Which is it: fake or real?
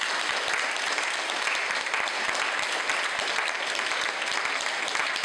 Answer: real